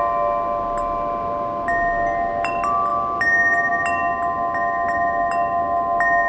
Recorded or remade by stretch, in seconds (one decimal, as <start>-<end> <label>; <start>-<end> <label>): 0.0-6.3 recorded